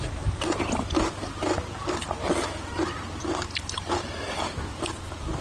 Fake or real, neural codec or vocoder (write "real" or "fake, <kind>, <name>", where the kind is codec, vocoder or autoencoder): real